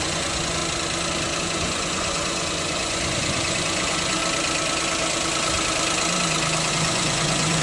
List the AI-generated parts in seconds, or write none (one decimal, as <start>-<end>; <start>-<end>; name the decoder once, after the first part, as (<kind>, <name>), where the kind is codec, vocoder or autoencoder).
0.0-0.6 (vocoder, Vocos); 1.4-4.2; 6.7-7.6